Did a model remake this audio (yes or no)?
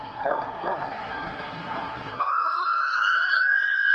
yes